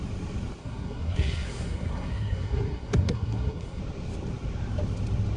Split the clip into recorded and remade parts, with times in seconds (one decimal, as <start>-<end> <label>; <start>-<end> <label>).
0.0-0.6 recorded; 0.6-3.8 remade; 3.8-5.4 recorded